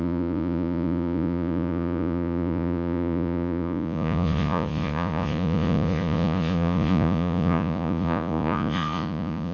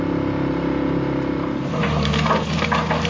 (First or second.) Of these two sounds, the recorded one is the second